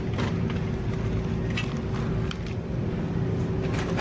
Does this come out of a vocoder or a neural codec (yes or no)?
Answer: no